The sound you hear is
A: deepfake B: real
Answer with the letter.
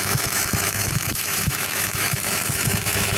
A